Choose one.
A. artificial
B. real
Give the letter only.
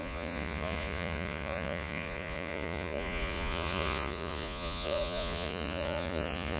A